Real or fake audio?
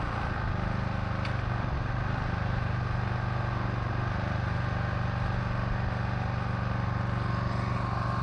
real